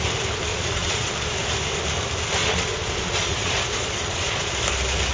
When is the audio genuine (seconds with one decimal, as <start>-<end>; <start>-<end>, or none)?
0.0-0.5; 1.1-2.4; 4.5-5.1